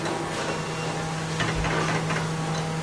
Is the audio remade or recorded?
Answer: recorded